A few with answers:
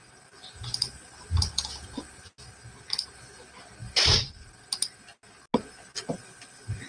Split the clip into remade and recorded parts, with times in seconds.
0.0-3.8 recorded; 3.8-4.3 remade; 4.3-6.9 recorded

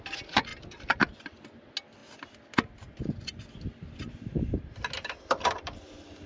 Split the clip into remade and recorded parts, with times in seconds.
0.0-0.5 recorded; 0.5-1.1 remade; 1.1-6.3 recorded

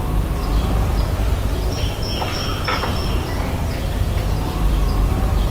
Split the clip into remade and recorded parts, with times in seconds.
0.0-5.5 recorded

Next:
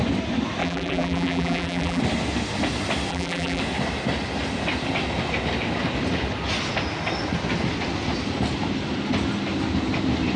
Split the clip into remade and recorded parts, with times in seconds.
0.0-0.6 recorded; 0.6-2.0 remade; 2.0-3.1 recorded; 3.1-3.6 remade; 3.6-10.4 recorded

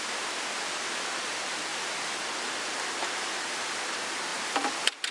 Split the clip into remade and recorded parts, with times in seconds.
0.0-4.3 recorded; 4.3-5.1 remade

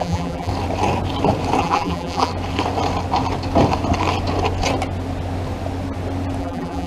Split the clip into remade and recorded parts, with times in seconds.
0.0-0.5 remade; 0.5-1.6 recorded; 1.6-2.3 remade; 2.3-6.4 recorded; 6.4-6.9 remade

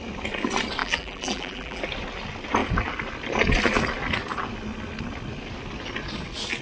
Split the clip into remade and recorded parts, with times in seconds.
0.0-0.8 recorded; 0.8-1.8 remade; 1.8-6.6 recorded